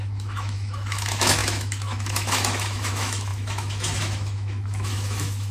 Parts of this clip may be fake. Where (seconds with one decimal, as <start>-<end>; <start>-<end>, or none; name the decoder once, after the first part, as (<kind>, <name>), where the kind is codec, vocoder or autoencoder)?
0.0-5.5 (autoencoder, DAC-VAE)